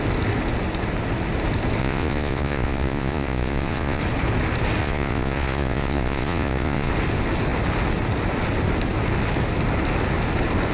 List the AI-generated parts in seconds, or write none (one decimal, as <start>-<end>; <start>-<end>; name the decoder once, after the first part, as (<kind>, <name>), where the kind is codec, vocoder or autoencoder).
1.8-4.0 (vocoder, Vocos); 4.8-6.9